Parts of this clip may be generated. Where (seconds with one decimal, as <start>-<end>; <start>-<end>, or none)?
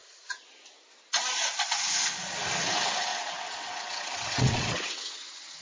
2.6-5.6